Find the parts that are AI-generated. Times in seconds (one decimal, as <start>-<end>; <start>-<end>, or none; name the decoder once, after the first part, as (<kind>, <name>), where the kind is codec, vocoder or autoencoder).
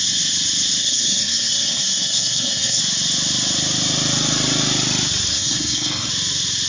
0.8-2.8 (codec, SNAC); 5.3-6.1